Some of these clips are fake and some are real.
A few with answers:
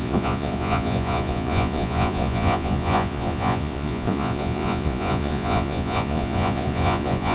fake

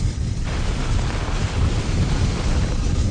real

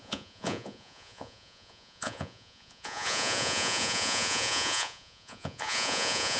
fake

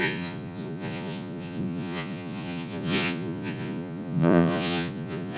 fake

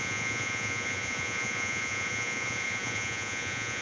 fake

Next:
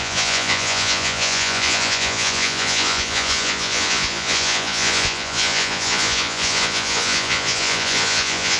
fake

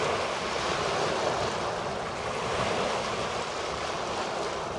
real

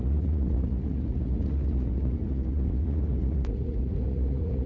fake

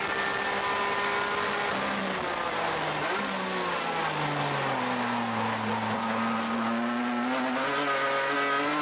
real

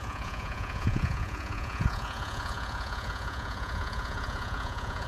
fake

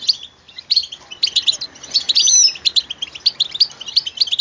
real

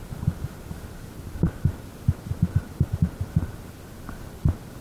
real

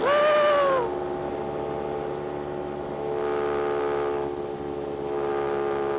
real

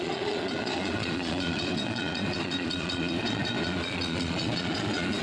fake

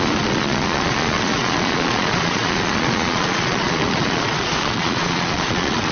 fake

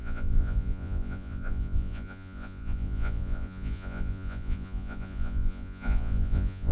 fake